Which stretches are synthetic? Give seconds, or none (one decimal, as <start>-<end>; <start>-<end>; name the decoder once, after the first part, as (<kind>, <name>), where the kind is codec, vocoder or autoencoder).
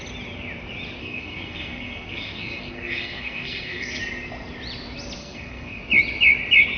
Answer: 1.0-4.0 (codec, SNAC); 5.2-5.8